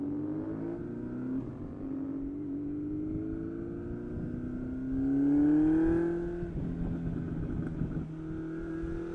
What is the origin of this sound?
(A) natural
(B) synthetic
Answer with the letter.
A